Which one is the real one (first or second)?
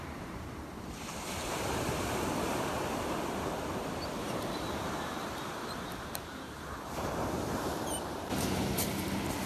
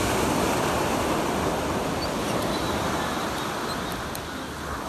second